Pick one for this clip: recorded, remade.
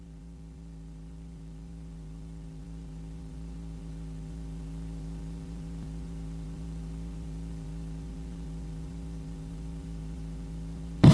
remade